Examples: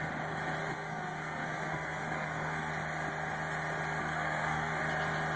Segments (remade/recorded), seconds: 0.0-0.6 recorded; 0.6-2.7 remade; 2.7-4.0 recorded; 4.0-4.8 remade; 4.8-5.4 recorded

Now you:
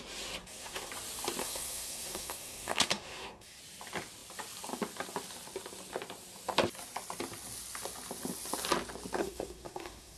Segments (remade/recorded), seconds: 0.0-0.4 recorded; 0.4-0.9 remade; 0.9-1.4 recorded; 1.4-3.6 remade; 3.6-9.2 recorded; 9.2-10.2 remade

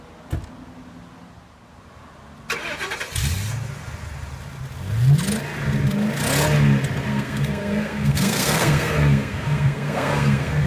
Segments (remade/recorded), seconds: 0.0-7.1 recorded; 7.1-10.7 remade

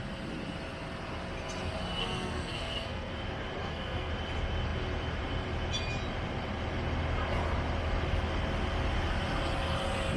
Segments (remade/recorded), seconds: 0.0-2.0 recorded; 2.0-3.1 remade; 3.1-3.6 recorded; 3.6-4.1 remade; 4.1-10.2 recorded

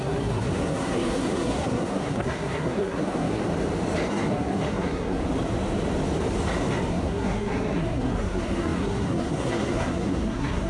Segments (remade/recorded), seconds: 0.0-3.4 remade; 3.4-4.1 recorded; 4.1-5.2 remade; 5.2-6.9 recorded; 6.9-10.7 remade

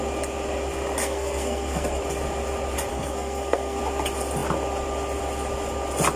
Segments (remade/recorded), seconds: 0.0-1.0 recorded; 1.0-2.0 remade; 2.0-2.9 recorded; 2.9-3.8 remade; 3.8-6.2 recorded